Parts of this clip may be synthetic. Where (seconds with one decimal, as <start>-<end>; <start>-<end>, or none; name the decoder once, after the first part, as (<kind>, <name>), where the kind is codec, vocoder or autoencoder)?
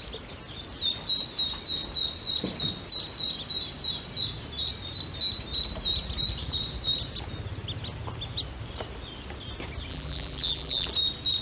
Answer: 9.9-10.9 (vocoder, BigVGAN v2)